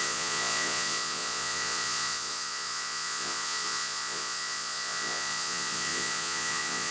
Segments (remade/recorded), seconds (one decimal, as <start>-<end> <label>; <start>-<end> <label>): 0.0-6.9 remade